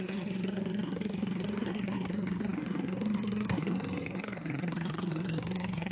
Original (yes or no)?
no